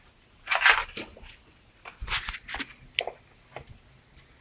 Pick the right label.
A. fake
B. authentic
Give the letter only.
B